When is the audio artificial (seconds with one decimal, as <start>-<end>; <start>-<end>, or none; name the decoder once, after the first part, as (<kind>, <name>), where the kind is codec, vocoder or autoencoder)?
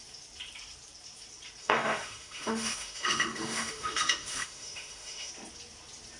1.6-5.3 (autoencoder, DAC-VAE)